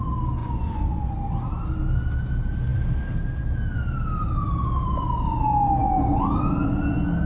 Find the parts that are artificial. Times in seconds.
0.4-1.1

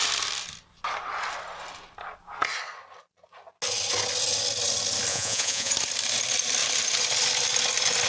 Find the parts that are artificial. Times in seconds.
5.1-5.7

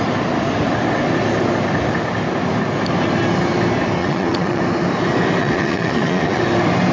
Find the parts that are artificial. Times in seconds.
4.0-4.6; 5.4-6.4

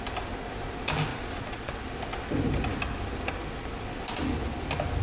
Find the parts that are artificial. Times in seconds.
1.1-1.7

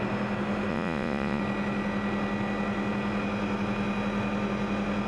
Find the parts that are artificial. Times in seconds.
0.7-1.4

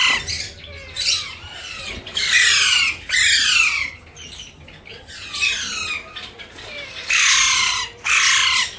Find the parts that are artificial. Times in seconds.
none